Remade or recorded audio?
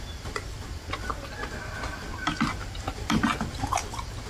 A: recorded